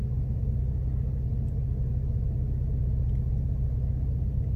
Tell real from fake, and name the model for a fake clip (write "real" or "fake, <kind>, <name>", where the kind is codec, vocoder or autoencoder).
real